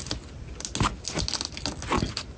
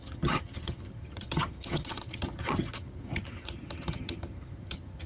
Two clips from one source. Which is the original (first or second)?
first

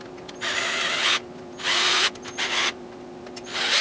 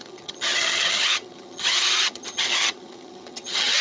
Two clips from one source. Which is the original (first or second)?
first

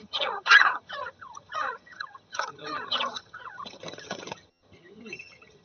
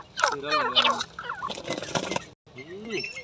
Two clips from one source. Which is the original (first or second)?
second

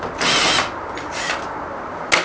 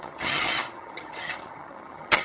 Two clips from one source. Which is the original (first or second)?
first